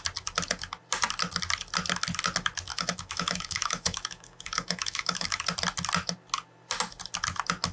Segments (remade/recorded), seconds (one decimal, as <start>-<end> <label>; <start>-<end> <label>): 0.0-2.7 recorded; 2.7-5.4 remade; 5.4-7.7 recorded